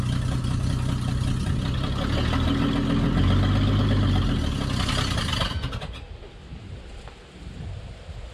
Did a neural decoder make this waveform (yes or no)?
no